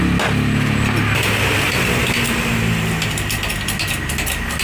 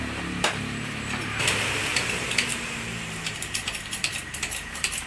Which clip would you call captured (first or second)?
first